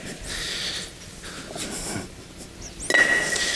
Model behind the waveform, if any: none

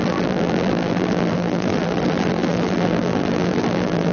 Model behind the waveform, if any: vocoder, BigVGAN v2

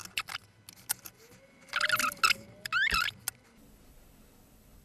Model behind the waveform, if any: none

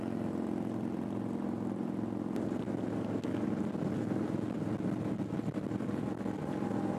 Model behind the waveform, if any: none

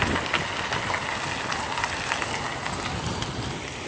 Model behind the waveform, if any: none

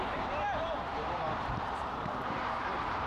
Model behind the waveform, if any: vocoder, BigVGAN v2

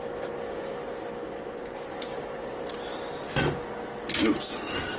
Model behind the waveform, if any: none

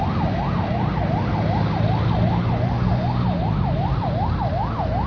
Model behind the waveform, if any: none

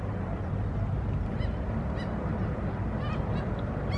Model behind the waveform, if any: none